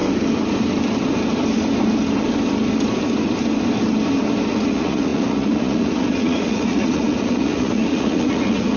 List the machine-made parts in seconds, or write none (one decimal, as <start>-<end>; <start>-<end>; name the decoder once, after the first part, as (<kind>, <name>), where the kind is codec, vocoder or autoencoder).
4.5-8.8 (vocoder, Vocos)